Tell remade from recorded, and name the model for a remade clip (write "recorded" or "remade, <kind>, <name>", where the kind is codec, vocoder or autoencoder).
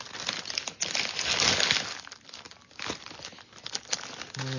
recorded